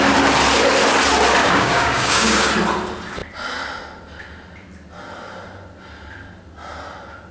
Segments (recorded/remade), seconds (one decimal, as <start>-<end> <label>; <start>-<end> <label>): 0.0-1.4 recorded; 1.4-2.5 remade; 2.5-7.3 recorded